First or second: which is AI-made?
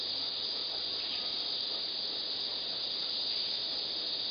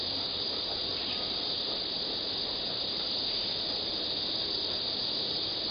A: second